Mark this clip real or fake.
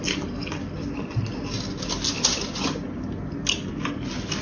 real